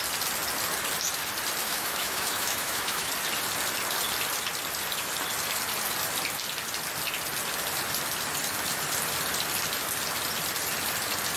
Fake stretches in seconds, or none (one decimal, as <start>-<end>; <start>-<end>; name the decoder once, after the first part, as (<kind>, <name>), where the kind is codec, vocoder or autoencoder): 1.6-3.1 (autoencoder, DAC-VAE)